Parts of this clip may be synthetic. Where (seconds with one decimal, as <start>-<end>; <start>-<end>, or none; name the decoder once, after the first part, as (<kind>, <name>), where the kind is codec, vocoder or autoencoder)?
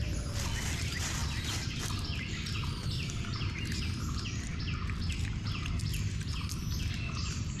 none